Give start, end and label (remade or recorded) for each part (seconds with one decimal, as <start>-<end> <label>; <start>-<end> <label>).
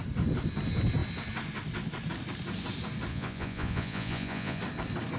0.0-3.1 recorded; 3.1-4.6 remade; 4.6-5.2 recorded